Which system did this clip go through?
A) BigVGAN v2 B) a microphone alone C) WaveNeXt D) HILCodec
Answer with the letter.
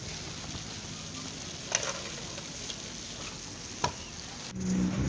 B